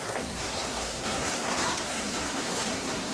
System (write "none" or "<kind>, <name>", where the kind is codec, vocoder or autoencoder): codec, SNAC